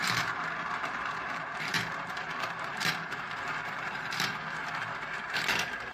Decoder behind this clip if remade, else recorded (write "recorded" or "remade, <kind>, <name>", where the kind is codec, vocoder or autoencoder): remade, vocoder, BigVGAN v2